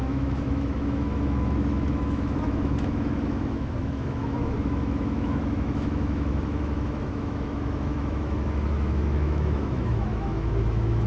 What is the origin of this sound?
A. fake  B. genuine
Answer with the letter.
A